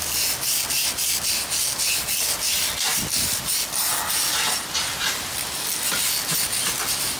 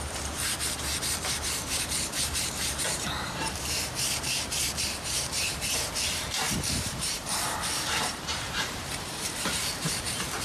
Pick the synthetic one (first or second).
second